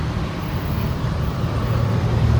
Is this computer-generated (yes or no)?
yes